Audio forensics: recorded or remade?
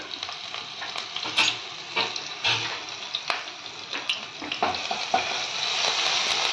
recorded